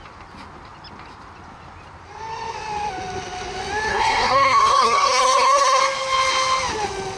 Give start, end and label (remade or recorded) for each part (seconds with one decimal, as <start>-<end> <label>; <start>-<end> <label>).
0.0-3.9 recorded; 3.9-5.8 remade; 5.8-7.2 recorded